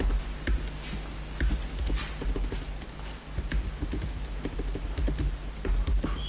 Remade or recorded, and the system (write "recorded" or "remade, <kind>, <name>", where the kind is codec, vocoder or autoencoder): recorded